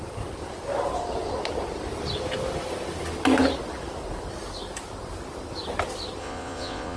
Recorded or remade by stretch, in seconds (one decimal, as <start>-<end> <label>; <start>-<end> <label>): 0.0-6.2 recorded; 6.2-7.0 remade